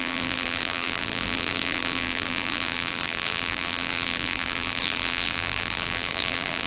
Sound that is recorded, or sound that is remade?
remade